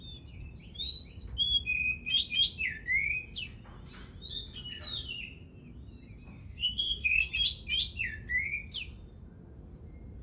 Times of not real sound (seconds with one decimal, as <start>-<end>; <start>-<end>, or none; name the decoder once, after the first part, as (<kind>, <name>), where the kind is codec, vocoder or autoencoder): 6.4-7.3 (codec, DAC)